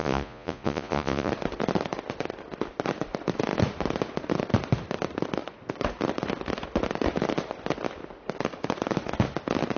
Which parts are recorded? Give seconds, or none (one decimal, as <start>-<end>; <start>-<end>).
1.3-9.8